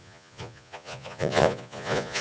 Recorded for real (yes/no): no